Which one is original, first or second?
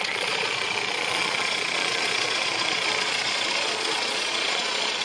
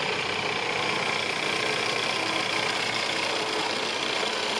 second